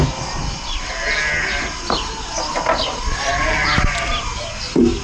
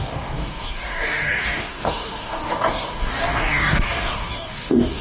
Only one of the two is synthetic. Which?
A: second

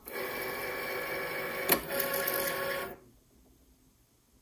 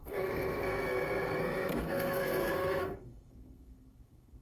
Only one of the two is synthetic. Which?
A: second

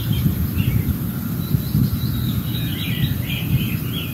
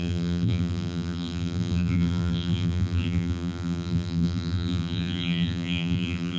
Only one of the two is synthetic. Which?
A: second